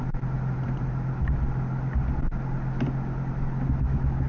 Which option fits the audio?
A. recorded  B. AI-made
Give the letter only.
A